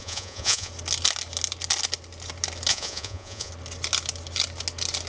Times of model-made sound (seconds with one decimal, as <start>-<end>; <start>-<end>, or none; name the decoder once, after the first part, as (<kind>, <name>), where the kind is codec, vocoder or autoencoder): 0.0-0.7 (vocoder, Vocos); 2.7-3.5